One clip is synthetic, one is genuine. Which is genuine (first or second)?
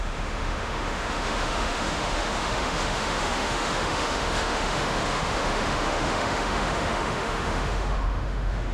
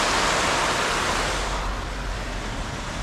second